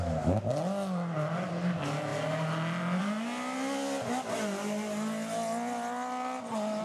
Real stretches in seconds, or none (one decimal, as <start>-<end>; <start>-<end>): 0.0-6.8